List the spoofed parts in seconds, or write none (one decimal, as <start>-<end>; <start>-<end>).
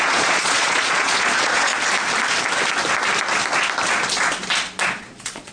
0.0-1.7; 5.0-5.5